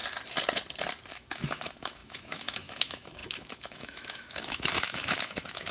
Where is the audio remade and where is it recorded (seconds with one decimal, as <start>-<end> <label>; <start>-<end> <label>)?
0.0-1.1 recorded; 1.1-5.7 remade